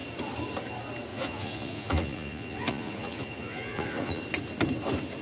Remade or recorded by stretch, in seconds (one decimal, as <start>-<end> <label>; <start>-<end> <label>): 0.0-1.1 recorded; 1.1-4.2 remade; 4.2-5.2 recorded